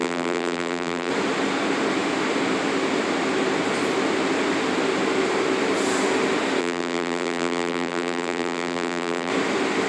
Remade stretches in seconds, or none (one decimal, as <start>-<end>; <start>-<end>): 0.0-1.1; 6.6-9.3